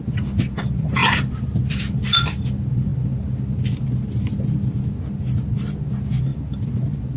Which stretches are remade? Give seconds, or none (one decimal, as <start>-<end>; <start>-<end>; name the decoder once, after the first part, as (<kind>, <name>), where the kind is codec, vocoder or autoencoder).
none